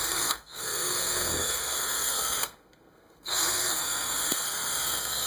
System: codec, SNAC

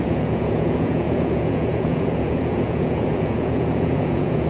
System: vocoder, Vocos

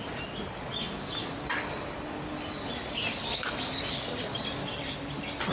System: none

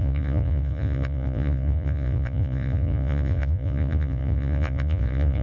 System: vocoder, Vocos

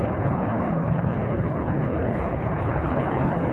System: codec, HILCodec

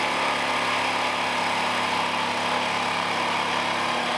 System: none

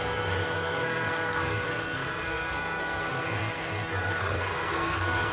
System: codec, SNAC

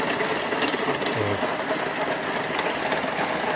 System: none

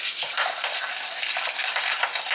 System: vocoder, BigVGAN v2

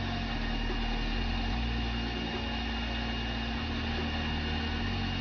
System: none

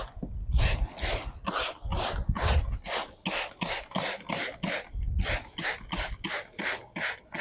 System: none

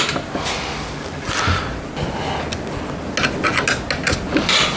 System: none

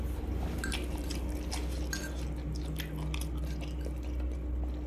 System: none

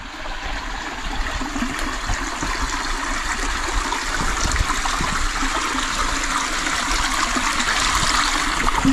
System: none